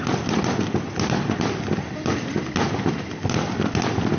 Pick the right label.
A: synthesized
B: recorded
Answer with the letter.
B